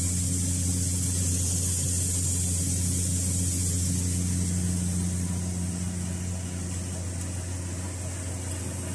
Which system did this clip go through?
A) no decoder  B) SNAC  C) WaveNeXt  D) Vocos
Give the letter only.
A